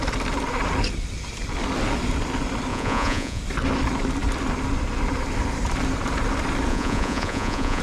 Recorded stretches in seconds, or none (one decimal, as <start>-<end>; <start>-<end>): 0.0-2.7; 3.4-6.7